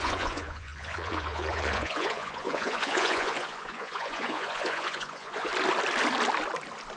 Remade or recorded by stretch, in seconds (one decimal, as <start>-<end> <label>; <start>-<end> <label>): 0.0-5.5 remade; 5.5-7.0 recorded